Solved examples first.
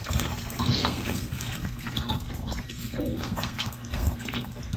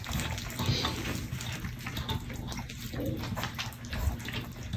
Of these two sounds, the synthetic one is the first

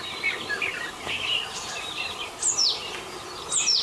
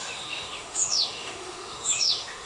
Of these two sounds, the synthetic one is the second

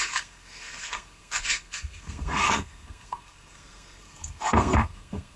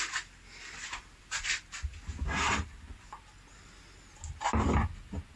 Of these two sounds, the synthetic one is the first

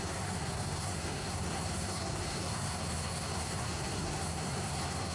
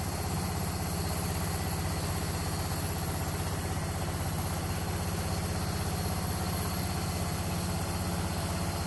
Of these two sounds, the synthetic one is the first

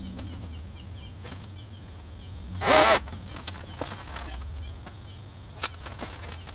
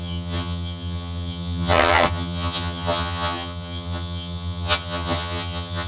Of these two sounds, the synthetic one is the second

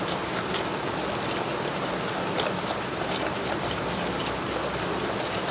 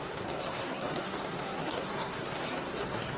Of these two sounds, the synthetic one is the second